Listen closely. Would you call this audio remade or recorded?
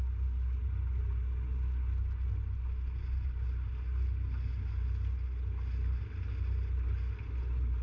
recorded